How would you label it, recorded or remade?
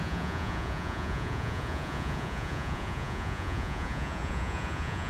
remade